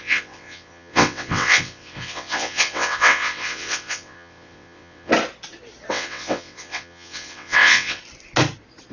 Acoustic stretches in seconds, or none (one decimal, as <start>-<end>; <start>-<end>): 5.1-5.9; 8.0-8.9